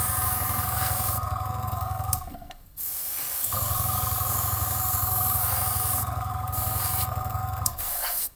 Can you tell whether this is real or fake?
fake